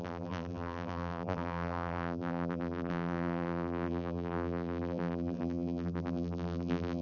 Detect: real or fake fake